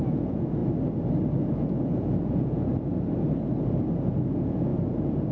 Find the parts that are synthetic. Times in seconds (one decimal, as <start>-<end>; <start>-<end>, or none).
0.0-0.6; 1.6-2.7; 4.3-4.7